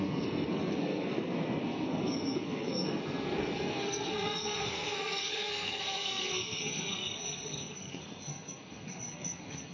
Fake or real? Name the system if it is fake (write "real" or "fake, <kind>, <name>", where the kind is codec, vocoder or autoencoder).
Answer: fake, codec, SNAC